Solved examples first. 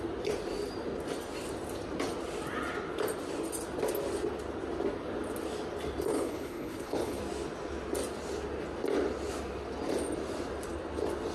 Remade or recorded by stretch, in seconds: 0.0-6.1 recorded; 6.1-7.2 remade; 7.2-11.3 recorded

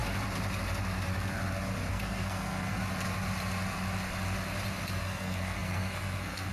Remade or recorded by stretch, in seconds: 0.0-1.9 recorded; 1.9-2.8 remade; 2.8-5.0 recorded; 5.0-6.5 remade

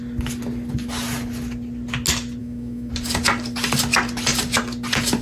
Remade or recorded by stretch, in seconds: 0.0-2.4 recorded; 2.4-2.9 remade; 2.9-5.2 recorded

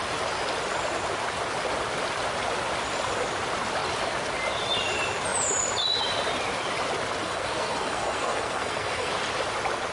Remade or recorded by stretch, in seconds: 0.0-7.2 recorded; 7.2-9.1 remade; 9.1-9.9 recorded

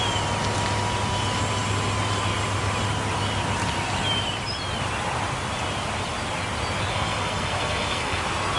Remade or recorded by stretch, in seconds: 0.0-6.9 recorded; 6.9-8.2 remade; 8.2-8.6 recorded

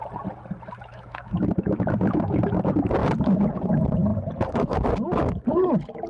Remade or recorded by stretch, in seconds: 0.0-0.9 recorded; 0.9-2.4 remade; 2.4-6.1 recorded